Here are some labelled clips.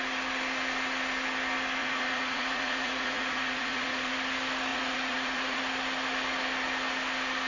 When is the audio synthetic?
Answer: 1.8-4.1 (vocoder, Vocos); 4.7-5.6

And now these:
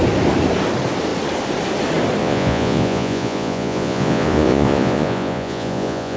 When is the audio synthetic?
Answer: 2.2-6.2 (vocoder, Vocos)

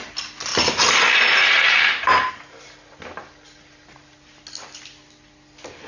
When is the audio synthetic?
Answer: none

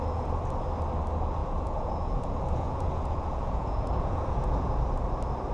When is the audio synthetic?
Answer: 1.4-4.7 (vocoder, Vocos)

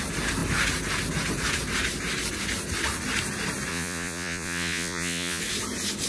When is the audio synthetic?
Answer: 3.7-5.4 (vocoder, Vocos)

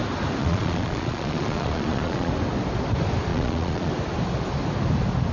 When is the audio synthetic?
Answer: 0.4-2.3 (vocoder, Vocos); 3.3-3.9

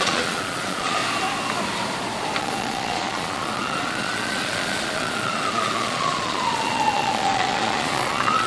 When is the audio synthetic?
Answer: 0.0-1.0 (vocoder, Vocos); 2.4-8.5